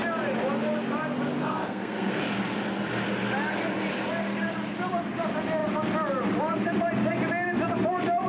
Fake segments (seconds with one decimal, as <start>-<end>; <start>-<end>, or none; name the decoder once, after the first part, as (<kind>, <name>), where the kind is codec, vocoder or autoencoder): 1.4-2.2 (codec, SNAC)